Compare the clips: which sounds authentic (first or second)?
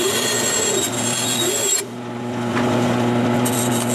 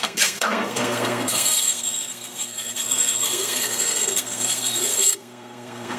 first